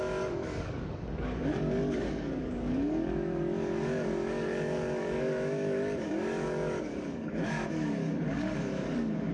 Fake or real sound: fake